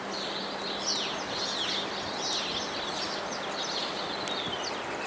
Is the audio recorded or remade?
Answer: recorded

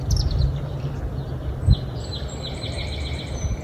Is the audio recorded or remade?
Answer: recorded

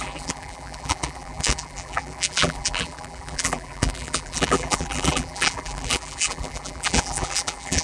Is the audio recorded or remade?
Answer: remade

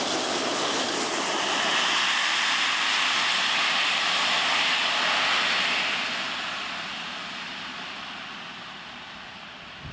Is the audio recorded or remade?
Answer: remade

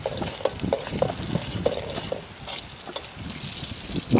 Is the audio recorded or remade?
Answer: recorded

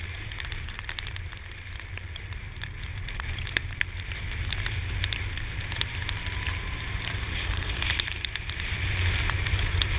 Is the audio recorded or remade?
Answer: remade